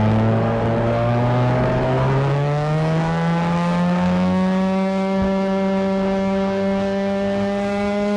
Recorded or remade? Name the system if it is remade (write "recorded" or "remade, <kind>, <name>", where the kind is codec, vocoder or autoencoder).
remade, codec, DAC